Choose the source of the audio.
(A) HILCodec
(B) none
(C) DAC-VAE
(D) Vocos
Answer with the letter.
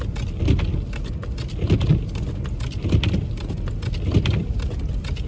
B